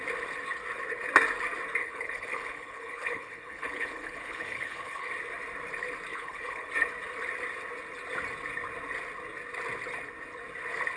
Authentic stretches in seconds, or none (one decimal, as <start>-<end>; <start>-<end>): 0.0-1.8; 5.1-6.1; 6.7-11.0